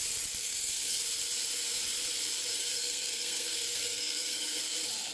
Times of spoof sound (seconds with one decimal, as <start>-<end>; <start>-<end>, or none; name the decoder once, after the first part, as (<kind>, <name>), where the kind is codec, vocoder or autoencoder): 0.4-1.0 (codec, SNAC); 2.5-4.6

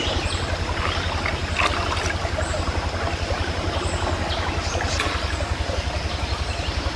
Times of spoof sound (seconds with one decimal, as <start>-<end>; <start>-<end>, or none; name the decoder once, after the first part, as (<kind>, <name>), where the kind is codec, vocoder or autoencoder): none

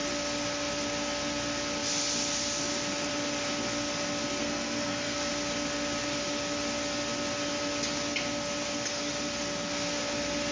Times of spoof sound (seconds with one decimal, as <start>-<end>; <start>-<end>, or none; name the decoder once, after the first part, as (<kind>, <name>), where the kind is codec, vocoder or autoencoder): 4.4-5.3 (codec, SNAC)

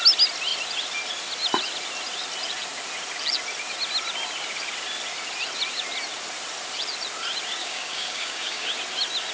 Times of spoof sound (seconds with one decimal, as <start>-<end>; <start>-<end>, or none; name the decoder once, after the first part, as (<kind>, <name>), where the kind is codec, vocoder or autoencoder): 7.6-8.7 (codec, DAC)

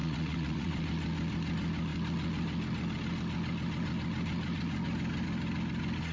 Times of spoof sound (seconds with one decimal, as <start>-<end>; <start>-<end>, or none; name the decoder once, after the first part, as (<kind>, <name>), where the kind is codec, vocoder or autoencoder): 0.0-0.7 (vocoder, Vocos)